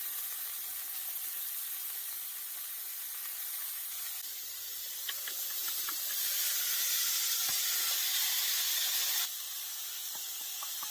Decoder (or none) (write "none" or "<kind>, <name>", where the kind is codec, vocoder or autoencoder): none